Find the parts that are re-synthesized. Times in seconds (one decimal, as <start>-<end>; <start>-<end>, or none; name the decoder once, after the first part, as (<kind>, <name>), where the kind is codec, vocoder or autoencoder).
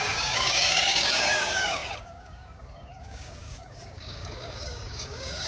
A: 0.0-5.5 (codec, DAC)